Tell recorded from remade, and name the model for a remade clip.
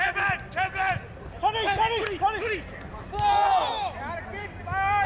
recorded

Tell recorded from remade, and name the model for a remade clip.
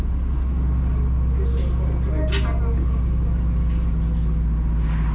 recorded